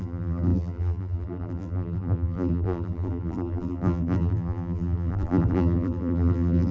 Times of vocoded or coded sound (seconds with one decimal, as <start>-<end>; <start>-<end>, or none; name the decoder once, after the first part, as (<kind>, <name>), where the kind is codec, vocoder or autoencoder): 0.0-6.7 (vocoder, BigVGAN v2)

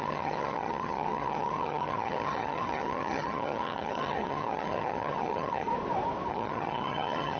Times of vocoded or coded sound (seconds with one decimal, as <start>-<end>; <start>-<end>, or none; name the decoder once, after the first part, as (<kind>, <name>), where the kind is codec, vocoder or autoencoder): 0.0-5.7 (vocoder, HiFi-GAN); 6.3-7.4

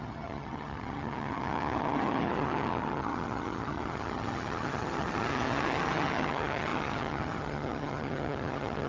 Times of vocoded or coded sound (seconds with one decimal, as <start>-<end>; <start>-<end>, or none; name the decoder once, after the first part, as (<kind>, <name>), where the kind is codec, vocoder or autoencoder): 0.0-8.9 (vocoder, HiFi-GAN)

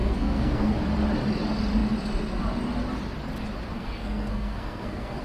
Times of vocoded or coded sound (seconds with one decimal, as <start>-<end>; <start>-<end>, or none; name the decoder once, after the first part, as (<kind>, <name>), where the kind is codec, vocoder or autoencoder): 0.0-0.7 (codec, SNAC); 3.7-5.2

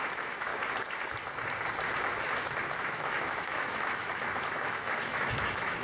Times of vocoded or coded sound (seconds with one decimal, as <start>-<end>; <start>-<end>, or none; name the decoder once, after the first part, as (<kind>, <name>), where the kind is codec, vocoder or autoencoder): 0.0-0.5 (autoencoder, DAC-VAE); 2.8-5.8

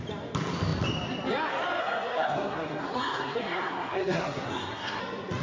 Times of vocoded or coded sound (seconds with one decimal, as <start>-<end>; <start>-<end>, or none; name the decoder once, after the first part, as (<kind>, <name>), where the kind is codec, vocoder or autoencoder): 1.8-5.0 (codec, SNAC)

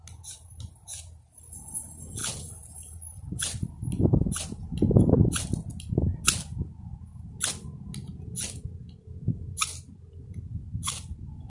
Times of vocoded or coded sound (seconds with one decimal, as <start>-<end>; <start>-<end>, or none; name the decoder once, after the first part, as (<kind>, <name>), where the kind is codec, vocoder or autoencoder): none

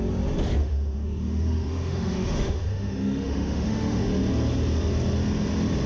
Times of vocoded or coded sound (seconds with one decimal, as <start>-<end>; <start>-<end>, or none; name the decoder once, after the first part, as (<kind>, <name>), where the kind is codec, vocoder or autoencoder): 0.6-4.1 (autoencoder, DAC-VAE)